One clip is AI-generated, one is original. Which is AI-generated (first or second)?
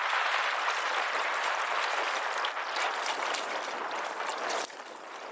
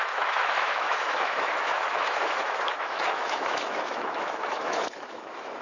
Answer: second